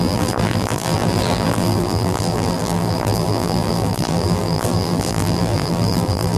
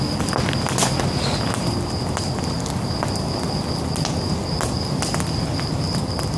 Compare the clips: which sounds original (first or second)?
second